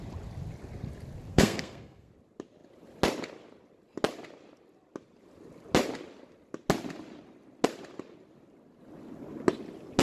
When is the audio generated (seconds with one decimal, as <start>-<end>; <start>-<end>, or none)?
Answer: 1.3-2.1